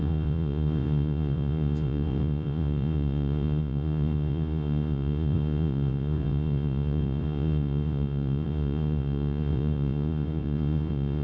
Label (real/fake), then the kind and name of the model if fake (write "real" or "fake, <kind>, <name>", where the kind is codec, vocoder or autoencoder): fake, vocoder, Vocos